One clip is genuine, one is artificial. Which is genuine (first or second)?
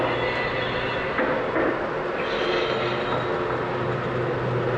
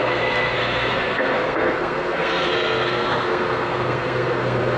first